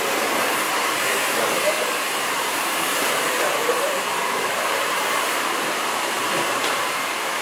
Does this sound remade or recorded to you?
remade